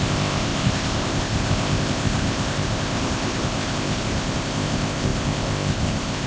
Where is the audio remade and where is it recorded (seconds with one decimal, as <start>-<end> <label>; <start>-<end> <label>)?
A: 0.0-6.3 remade